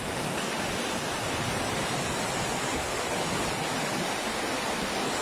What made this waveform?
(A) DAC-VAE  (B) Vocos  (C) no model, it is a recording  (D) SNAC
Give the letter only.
C